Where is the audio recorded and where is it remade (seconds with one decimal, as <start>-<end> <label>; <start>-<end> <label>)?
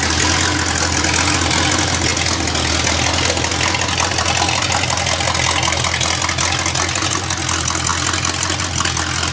0.0-9.3 recorded